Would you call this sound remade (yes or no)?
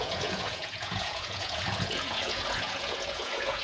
yes